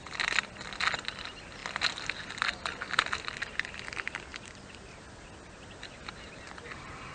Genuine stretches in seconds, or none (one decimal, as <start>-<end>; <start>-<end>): 0.0-7.1